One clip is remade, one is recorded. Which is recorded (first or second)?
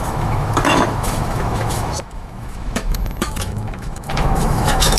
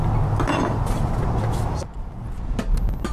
second